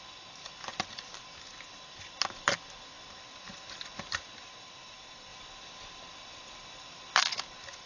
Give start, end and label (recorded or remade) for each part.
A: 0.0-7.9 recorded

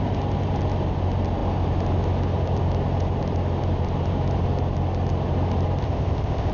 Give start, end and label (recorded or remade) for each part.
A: 0.0-5.8 recorded; 5.8-6.5 remade

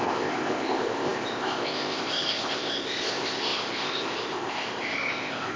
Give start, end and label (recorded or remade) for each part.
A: 0.0-5.6 remade

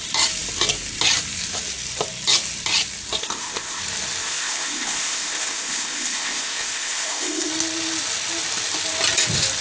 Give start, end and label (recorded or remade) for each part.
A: 0.0-3.2 recorded; 3.2-3.8 remade; 3.8-4.2 recorded; 4.2-7.5 remade; 7.5-9.6 recorded